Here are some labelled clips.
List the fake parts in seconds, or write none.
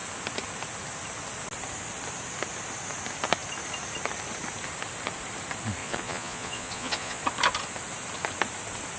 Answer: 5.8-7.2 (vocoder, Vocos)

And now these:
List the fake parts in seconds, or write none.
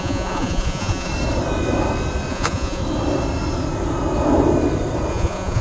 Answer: 0.0-1.1 (vocoder, Vocos); 2.3-2.8; 5.1-5.6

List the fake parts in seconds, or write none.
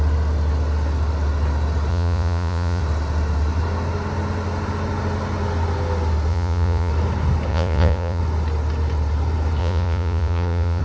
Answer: 1.9-2.8 (vocoder, Vocos); 6.3-6.9; 7.5-8.2; 9.6-10.8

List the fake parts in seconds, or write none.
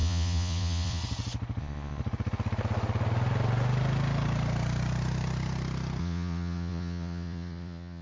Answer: 0.0-1.0 (vocoder, Vocos); 1.6-2.0; 6.0-8.0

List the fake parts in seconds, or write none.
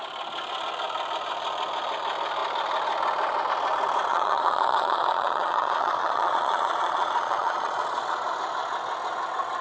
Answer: 4.1-8.3 (vocoder, Vocos)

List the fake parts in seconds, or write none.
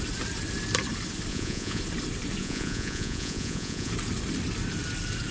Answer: 1.3-1.8 (vocoder, Vocos); 2.4-3.9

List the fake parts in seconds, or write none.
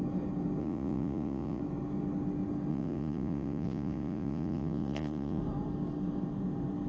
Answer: 0.6-1.6 (vocoder, Vocos); 2.7-5.4